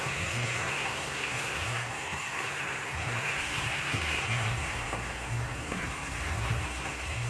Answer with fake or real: fake